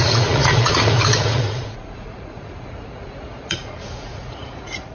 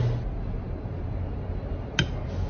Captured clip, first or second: second